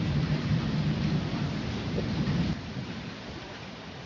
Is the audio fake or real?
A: fake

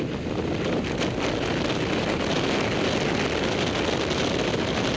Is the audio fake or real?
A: real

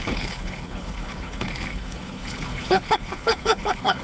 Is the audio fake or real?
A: fake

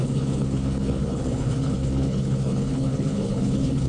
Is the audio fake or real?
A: fake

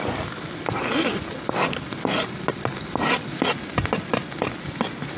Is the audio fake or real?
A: real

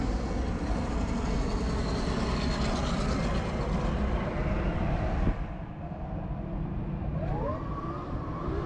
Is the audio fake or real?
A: real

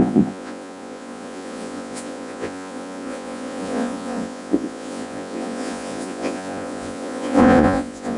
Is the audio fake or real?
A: fake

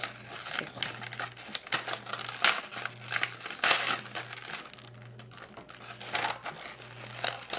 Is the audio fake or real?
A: real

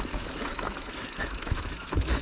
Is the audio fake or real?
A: fake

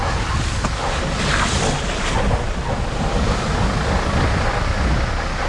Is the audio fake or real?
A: real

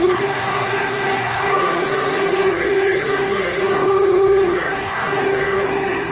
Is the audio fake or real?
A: fake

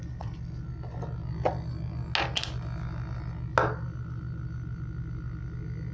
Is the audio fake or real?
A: real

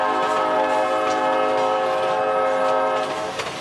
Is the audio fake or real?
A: real